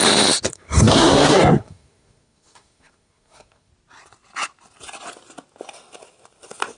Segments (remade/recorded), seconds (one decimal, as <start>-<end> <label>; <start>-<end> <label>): 0.0-0.5 recorded; 0.5-3.7 remade; 3.7-6.8 recorded